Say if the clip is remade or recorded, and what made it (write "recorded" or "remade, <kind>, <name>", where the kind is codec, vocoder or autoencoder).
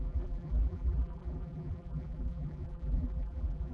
remade, vocoder, BigVGAN v2